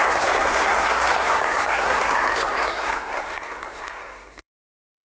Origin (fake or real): fake